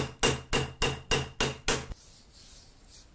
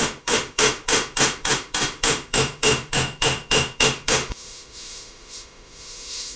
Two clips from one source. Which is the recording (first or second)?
first